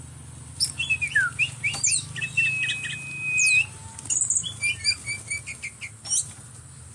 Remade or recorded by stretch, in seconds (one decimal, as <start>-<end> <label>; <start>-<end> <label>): 0.0-6.9 recorded